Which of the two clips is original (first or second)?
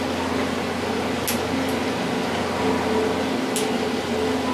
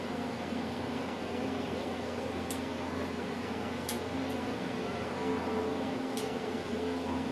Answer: first